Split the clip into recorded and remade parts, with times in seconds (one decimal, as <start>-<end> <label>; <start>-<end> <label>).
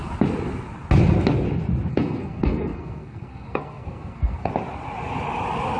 0.0-1.9 recorded; 1.9-4.5 remade; 4.5-5.8 recorded